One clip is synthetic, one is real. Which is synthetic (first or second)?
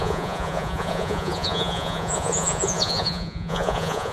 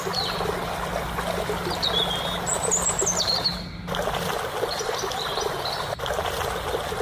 first